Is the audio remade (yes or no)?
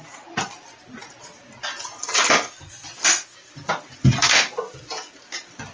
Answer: no